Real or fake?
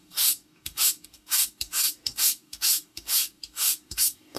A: fake